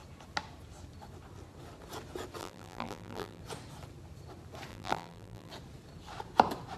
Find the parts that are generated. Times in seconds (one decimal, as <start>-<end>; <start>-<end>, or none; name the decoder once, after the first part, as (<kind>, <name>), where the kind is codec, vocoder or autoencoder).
2.4-3.4 (vocoder, BigVGAN v2); 4.7-5.5